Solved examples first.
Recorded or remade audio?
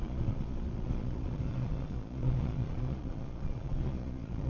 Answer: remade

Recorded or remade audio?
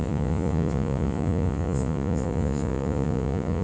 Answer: remade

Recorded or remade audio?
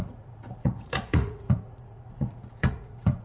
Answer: remade